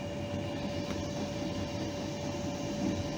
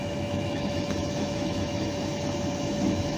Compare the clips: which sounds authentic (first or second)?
first